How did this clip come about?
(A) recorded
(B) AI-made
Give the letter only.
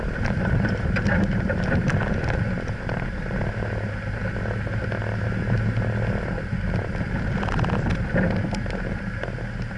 A